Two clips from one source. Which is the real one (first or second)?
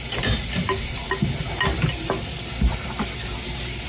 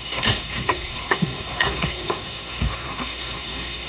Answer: first